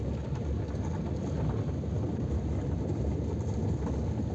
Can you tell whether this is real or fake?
real